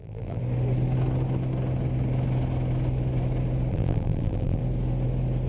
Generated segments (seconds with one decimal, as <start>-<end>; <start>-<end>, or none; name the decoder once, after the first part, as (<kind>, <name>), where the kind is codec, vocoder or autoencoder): 0.0-0.4 (vocoder, BigVGAN v2); 3.7-4.6